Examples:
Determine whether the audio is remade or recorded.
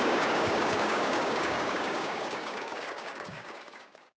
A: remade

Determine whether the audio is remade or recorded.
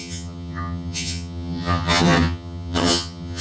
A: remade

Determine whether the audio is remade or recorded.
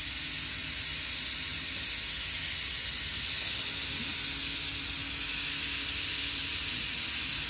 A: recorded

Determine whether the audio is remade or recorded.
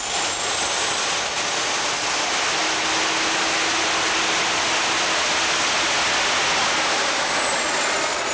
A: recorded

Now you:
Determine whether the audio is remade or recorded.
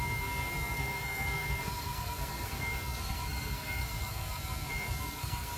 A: remade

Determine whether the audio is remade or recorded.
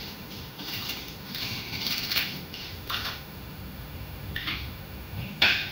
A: remade